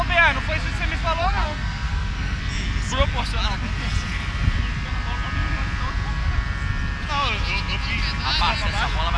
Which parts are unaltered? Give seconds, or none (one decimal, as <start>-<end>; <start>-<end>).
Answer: 0.0-1.2; 2.4-9.2